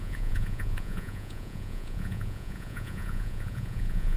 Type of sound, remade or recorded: remade